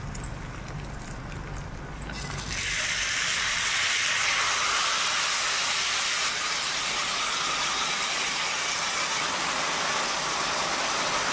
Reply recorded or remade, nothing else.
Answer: recorded